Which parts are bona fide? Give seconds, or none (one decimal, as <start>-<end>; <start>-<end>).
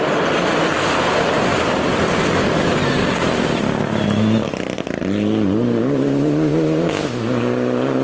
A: 0.0-8.0